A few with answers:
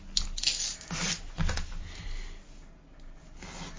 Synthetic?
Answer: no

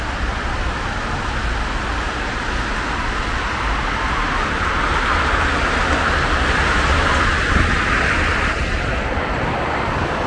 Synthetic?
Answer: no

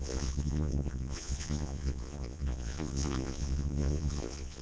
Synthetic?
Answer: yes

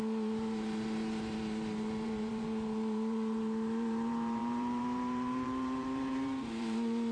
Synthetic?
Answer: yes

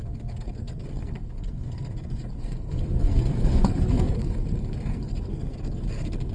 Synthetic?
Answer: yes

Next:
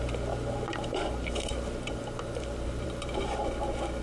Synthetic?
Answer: no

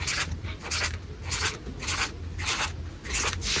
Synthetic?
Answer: no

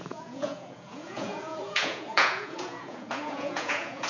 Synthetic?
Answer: yes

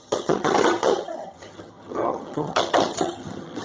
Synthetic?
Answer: yes